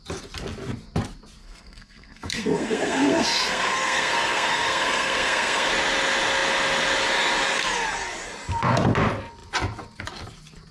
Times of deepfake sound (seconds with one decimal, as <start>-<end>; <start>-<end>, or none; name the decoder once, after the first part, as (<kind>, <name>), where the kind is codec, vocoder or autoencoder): 1.4-5.7 (codec, SNAC)